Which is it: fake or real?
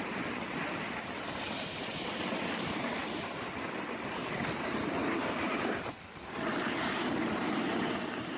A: real